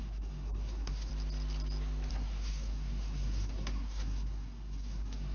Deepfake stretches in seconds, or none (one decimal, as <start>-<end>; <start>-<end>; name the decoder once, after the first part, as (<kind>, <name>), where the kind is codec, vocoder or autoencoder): 0.0-1.1 (codec, SNAC); 2.1-5.3